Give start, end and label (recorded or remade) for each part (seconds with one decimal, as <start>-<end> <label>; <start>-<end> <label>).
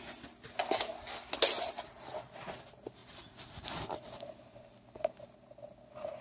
0.0-3.0 recorded; 3.0-5.3 remade; 5.3-6.2 recorded